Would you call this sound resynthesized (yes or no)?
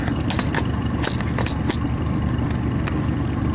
no